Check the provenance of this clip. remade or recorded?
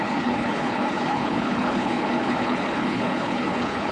remade